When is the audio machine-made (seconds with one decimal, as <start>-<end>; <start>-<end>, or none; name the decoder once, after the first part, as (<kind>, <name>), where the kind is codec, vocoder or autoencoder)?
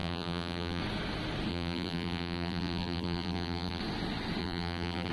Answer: 0.0-0.8 (vocoder, BigVGAN v2); 1.5-3.8; 4.4-5.1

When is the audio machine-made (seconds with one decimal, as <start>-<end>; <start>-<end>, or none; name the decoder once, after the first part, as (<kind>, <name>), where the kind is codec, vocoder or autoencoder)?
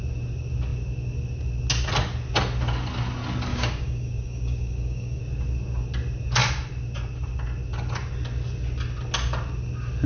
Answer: 3.5-5.2 (codec, DAC)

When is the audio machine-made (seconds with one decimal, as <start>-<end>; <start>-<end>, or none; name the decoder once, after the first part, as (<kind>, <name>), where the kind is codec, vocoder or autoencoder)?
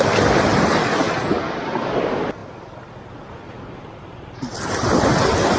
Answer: none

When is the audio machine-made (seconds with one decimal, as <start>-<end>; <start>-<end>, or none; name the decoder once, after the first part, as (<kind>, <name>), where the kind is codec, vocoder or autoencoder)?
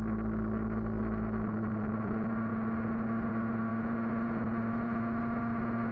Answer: none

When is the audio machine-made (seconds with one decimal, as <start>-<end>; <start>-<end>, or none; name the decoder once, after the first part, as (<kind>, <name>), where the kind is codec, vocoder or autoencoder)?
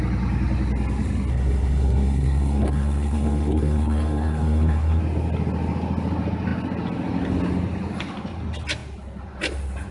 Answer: 1.3-5.0 (codec, SNAC)